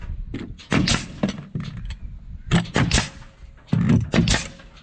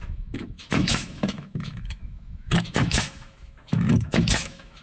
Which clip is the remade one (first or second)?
second